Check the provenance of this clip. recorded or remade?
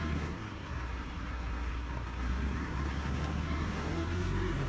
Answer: remade